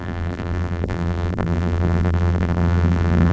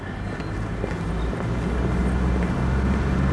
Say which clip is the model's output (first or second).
first